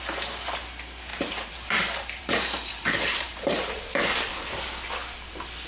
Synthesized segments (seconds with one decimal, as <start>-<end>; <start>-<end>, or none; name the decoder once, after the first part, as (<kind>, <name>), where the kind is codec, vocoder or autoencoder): 1.1-4.5 (vocoder, BigVGAN v2)